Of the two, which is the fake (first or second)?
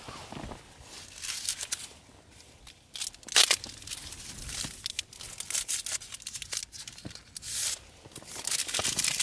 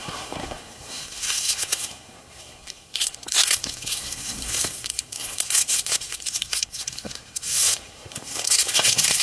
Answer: second